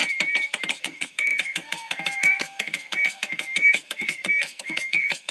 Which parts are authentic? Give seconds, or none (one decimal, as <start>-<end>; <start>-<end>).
0.0-0.8